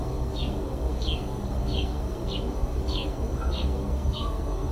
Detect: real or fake fake